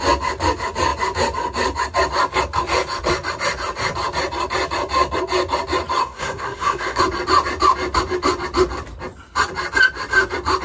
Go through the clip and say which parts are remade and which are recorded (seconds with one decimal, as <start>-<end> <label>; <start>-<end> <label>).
0.0-6.0 recorded; 6.0-7.0 remade; 7.0-10.6 recorded